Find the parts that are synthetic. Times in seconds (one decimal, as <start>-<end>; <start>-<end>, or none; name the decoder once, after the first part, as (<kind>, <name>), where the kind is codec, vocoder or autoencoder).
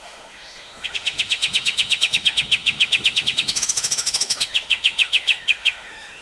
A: 0.0-6.2 (autoencoder, DAC-VAE)